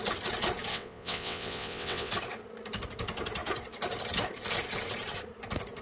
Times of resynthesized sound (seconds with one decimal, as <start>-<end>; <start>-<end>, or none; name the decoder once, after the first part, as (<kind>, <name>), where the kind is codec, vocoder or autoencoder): 0.7-2.1 (vocoder, WaveNeXt)